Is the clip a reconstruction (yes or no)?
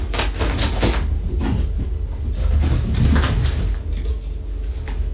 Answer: no